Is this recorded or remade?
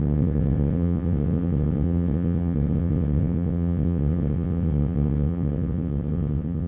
remade